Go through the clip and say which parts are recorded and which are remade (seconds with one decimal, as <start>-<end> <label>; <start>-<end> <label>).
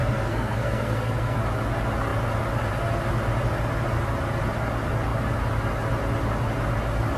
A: 0.0-1.4 remade; 1.4-7.2 recorded